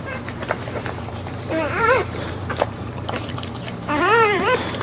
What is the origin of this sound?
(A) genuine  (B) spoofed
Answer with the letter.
B